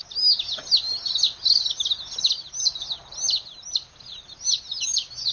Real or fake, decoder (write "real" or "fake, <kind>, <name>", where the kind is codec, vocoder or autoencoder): real